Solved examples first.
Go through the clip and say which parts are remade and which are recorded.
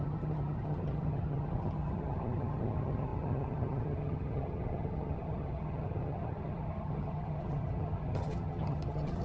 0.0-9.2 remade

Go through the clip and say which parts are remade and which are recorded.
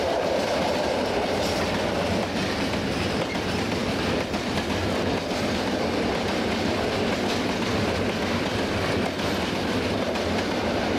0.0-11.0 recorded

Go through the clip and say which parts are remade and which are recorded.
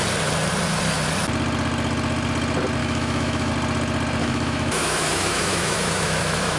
0.0-2.8 recorded; 2.8-3.5 remade; 3.5-4.2 recorded; 4.2-6.6 remade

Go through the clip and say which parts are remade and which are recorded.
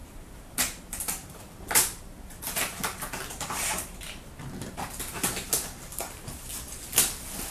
0.0-4.3 remade; 4.3-5.9 recorded; 5.9-6.5 remade; 6.5-7.5 recorded